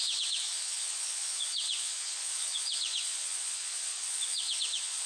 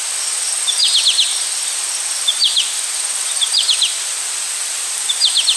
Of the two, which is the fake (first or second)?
first